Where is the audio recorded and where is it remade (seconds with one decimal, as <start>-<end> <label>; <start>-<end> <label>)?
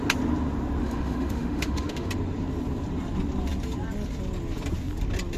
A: 0.0-0.8 recorded; 0.8-2.1 remade; 2.1-5.4 recorded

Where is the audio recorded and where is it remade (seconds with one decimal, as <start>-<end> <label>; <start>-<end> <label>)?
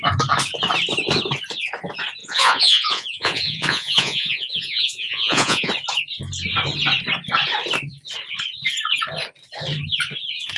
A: 0.0-2.2 recorded; 2.2-5.7 remade; 5.7-10.6 recorded